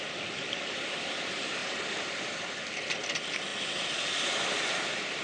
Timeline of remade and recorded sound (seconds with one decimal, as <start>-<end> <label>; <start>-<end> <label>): 0.0-3.5 remade; 3.5-4.5 recorded; 4.5-5.2 remade